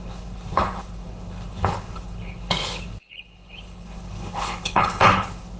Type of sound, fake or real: fake